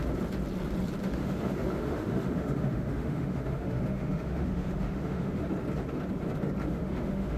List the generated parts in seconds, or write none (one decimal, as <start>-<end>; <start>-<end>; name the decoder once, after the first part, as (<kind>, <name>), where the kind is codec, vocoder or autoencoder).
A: 1.0-5.4 (autoencoder, DAC-VAE); 6.7-7.4